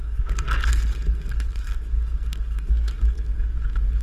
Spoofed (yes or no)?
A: yes